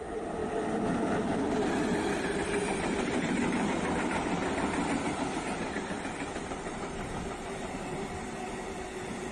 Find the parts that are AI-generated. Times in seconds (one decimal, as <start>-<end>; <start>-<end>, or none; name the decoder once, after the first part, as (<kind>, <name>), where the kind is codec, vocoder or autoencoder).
0.0-4.4 (vocoder, BigVGAN v2); 5.9-9.3